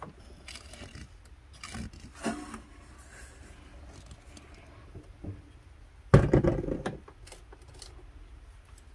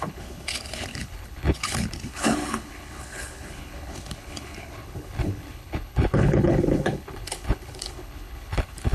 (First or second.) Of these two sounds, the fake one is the second